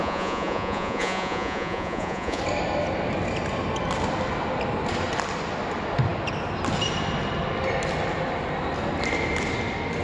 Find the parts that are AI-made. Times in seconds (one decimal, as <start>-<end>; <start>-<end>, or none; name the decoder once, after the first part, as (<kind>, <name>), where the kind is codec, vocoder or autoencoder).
0.0-2.4 (vocoder, Vocos)